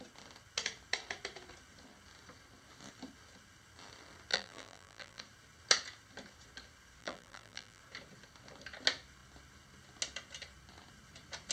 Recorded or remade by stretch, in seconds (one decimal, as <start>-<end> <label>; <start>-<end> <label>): 0.0-4.3 recorded; 4.3-5.2 remade; 5.2-7.0 recorded; 7.0-7.8 remade; 7.8-11.5 recorded